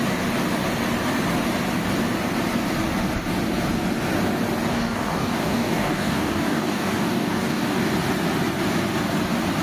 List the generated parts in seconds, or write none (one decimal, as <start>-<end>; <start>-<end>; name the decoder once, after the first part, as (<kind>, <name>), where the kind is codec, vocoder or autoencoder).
4.7-7.9 (codec, DAC)